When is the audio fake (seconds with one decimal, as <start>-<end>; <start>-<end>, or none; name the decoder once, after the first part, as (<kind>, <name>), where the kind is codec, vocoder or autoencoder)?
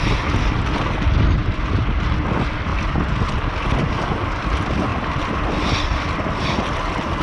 none